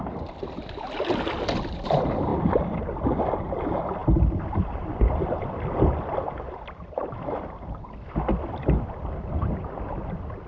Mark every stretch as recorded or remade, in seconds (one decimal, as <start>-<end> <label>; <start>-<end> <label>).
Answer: 0.0-10.5 recorded

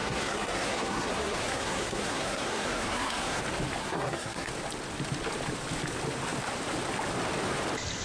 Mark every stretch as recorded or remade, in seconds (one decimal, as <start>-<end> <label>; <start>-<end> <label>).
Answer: 0.0-3.4 remade; 3.4-3.8 recorded; 3.8-4.5 remade; 4.5-8.0 recorded